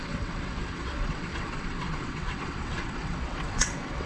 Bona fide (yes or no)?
no